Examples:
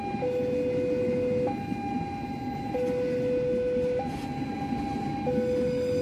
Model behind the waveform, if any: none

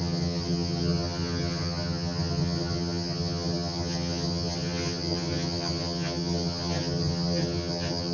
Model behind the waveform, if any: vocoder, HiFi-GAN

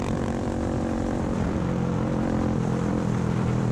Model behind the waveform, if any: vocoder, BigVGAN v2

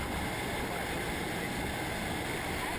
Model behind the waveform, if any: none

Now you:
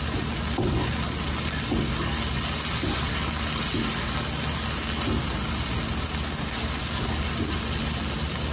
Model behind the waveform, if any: none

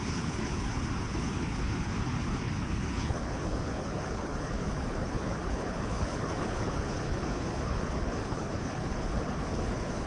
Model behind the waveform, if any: codec, HILCodec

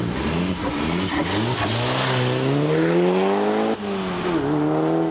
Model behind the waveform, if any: none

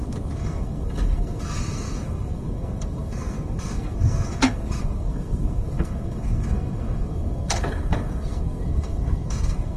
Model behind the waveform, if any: codec, SNAC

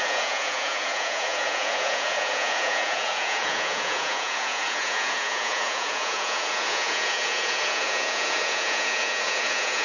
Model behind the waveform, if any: vocoder, Vocos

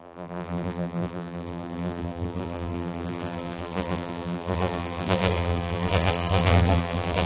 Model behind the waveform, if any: vocoder, BigVGAN v2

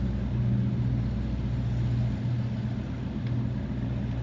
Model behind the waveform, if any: none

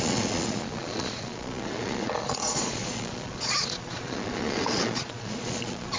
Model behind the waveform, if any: vocoder, Vocos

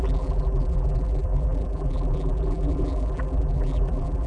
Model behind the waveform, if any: vocoder, BigVGAN v2